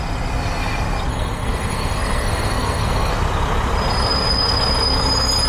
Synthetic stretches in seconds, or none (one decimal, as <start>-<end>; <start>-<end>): 1.1-3.1